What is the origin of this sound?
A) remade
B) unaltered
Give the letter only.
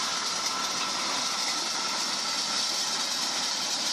B